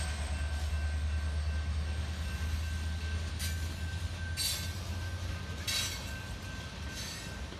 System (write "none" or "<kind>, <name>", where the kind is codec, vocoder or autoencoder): none